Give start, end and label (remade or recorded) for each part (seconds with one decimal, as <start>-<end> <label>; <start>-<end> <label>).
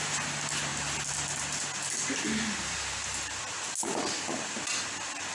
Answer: 0.0-5.3 recorded